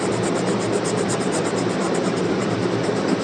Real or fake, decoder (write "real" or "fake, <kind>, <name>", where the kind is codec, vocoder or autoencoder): fake, vocoder, BigVGAN v2